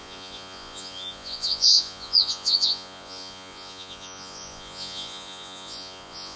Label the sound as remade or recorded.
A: remade